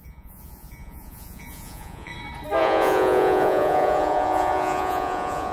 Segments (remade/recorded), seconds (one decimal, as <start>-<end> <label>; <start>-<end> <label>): 0.0-2.1 remade; 2.1-2.6 recorded; 2.6-5.5 remade